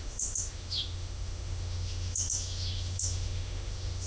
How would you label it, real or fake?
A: fake